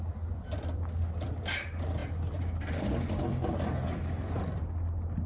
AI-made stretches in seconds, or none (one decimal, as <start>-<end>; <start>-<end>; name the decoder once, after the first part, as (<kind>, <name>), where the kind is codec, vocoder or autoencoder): 0.0-5.3 (vocoder, BigVGAN v2)